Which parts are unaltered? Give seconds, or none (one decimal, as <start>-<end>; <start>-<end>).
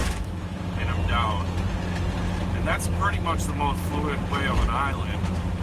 0.6-5.6